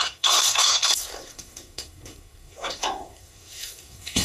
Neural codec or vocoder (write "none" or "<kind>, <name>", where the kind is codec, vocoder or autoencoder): codec, SNAC